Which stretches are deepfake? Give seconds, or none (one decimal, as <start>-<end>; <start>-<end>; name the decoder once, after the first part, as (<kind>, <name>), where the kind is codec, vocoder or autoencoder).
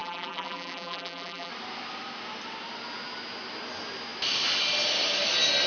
0.0-1.5 (vocoder, BigVGAN v2)